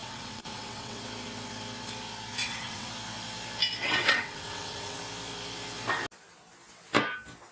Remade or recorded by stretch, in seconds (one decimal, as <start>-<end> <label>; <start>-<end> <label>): 0.0-1.0 remade; 1.0-2.4 recorded; 2.4-2.9 remade; 2.9-3.8 recorded; 3.8-5.0 remade; 5.0-7.5 recorded